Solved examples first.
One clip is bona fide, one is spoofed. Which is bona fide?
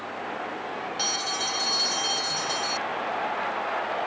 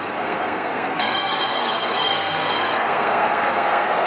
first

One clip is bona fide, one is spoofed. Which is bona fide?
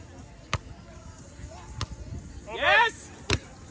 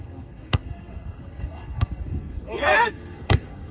first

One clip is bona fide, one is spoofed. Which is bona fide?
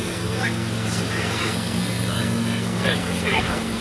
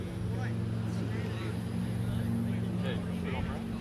second